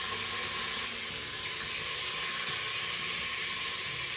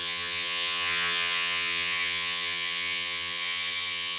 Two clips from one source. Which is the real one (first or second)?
first